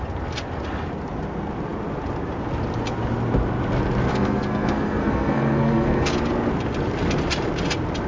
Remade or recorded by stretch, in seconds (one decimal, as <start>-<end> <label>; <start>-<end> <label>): 0.0-4.1 recorded; 4.1-6.1 remade; 6.1-8.1 recorded